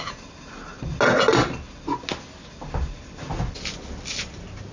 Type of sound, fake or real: real